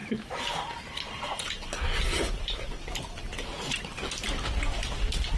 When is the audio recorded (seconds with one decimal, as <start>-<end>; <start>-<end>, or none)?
3.2-5.4